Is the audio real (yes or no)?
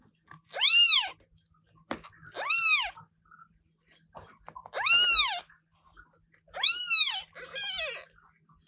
yes